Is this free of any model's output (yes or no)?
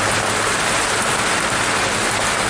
yes